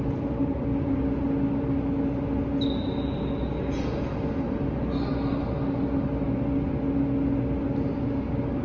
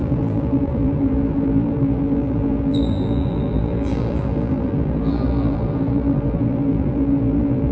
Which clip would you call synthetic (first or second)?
second